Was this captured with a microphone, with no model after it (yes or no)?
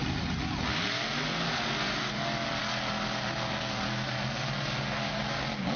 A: yes